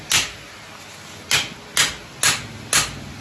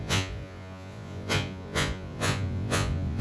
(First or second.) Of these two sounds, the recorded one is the first